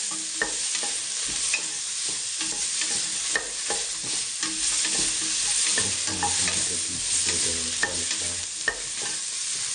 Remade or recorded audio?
recorded